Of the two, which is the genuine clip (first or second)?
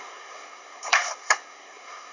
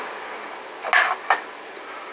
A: second